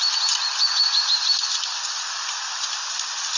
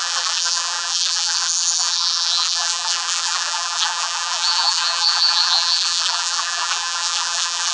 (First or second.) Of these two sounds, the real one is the first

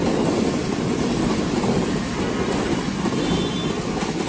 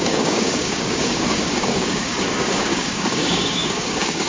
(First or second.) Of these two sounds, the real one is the first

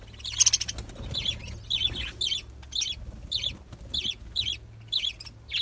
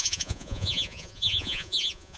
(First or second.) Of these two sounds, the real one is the first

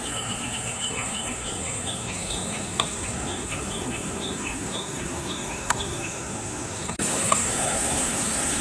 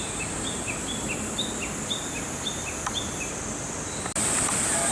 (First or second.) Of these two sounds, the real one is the second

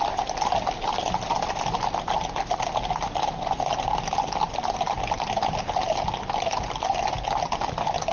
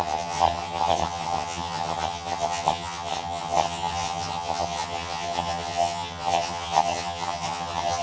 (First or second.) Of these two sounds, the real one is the first